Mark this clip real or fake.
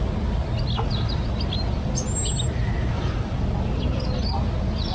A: real